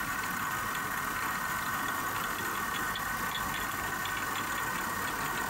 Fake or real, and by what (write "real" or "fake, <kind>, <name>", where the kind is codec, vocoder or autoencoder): real